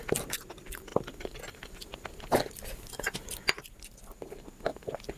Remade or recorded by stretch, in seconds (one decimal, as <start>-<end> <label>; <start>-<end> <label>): 0.0-5.2 recorded